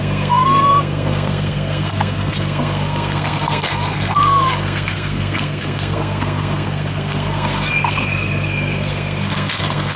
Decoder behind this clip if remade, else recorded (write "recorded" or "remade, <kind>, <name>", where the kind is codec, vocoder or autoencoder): remade, codec, SNAC